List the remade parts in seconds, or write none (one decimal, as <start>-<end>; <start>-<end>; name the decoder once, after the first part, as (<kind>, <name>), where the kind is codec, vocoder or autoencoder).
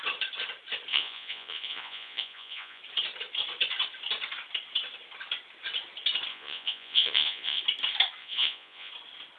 0.9-2.8 (vocoder, Vocos); 6.3-7.6; 8.2-8.9